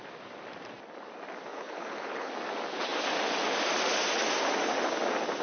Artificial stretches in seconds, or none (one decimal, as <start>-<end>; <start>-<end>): 1.5-2.3